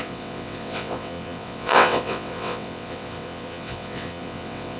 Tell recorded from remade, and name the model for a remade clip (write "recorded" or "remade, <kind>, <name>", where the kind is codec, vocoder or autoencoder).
remade, vocoder, WaveNeXt